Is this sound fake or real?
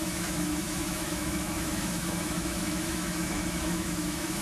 fake